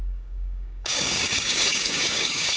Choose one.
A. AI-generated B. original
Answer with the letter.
A